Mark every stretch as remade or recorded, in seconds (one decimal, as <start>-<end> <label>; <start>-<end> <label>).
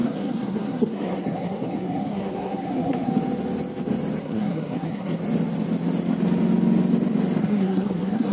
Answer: 0.0-3.1 remade; 3.1-4.2 recorded; 4.2-5.2 remade; 5.2-7.4 recorded; 7.4-8.3 remade